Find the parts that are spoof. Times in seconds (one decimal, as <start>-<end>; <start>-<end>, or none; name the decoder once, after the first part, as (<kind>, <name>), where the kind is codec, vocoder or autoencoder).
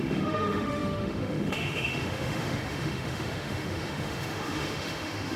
0.0-5.4 (autoencoder, DAC-VAE)